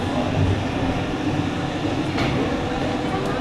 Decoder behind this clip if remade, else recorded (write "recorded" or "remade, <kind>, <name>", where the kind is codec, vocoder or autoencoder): recorded